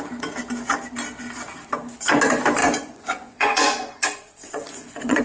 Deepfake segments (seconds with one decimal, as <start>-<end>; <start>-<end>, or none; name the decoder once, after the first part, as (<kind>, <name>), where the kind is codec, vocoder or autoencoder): 2.6-5.2 (vocoder, Vocos)